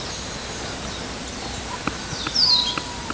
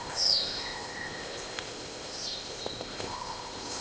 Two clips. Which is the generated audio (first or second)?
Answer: second